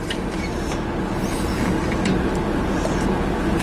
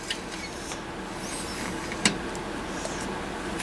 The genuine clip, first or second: second